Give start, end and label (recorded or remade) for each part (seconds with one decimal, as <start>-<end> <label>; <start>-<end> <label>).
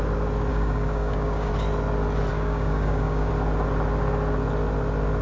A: 0.0-0.5 recorded; 0.5-1.5 remade; 1.5-2.3 recorded; 2.3-3.3 remade; 3.3-5.2 recorded